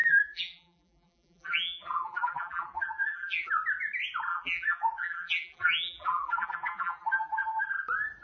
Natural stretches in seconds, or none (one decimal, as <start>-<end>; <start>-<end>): 3.5-4.3; 7.6-8.2